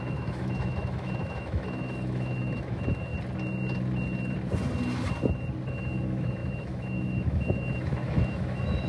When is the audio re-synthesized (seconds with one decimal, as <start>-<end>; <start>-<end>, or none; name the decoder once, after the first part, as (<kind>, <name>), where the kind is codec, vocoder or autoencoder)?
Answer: 0.0-3.1 (autoencoder, DAC-VAE); 5.7-8.9